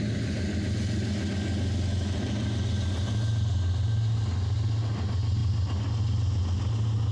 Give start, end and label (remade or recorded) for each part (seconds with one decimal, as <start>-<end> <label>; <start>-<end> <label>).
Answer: 0.0-7.1 recorded